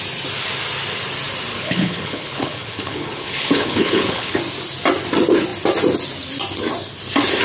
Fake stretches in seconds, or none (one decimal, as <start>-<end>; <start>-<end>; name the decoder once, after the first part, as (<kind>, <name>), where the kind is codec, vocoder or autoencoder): 1.5-4.4 (codec, HILCodec)